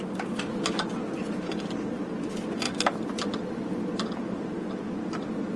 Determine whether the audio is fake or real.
real